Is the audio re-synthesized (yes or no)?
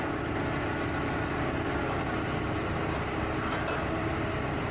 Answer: no